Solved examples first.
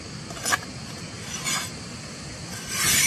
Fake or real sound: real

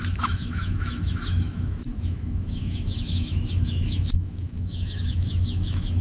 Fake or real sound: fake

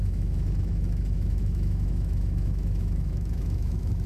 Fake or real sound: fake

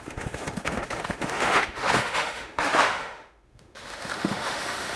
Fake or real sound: fake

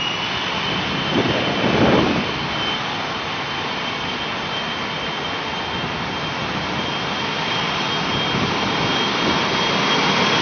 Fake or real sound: real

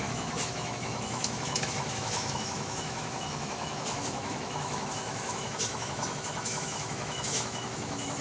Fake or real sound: fake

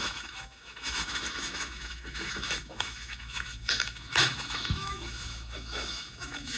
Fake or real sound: fake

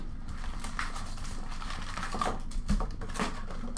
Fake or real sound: real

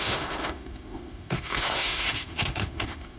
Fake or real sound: fake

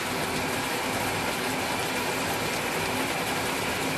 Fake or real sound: real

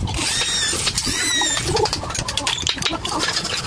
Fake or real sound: real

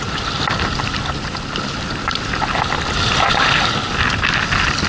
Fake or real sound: real